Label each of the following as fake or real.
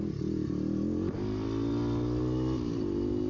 real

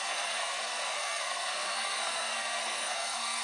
fake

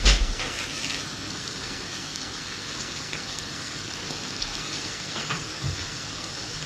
fake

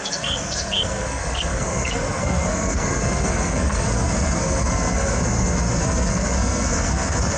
fake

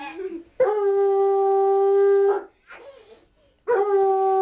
real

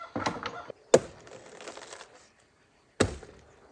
real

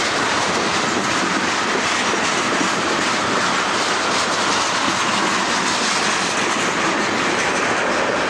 real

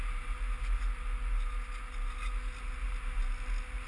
real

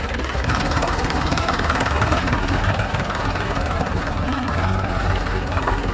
fake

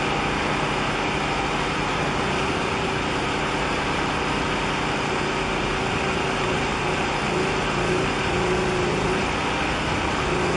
real